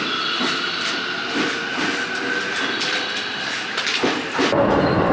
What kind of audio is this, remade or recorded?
recorded